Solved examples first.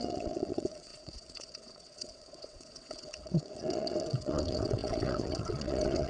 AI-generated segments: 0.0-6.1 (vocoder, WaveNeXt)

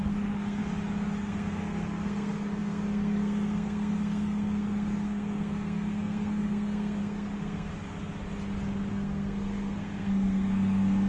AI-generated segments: 0.0-0.6 (codec, SNAC); 1.2-7.7; 8.9-11.1

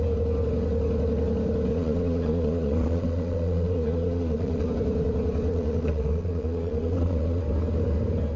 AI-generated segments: 1.7-4.7 (vocoder, Vocos); 5.5-7.4

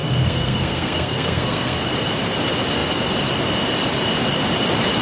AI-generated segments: 0.0-1.8 (codec, SNAC)

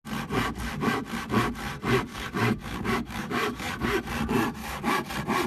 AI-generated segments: 2.1-4.0 (codec, DAC); 4.6-5.1